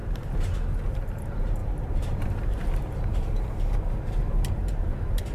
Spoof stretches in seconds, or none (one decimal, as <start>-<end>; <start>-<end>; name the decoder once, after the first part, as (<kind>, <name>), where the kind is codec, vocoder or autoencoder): 0.9-5.3 (vocoder, BigVGAN v2)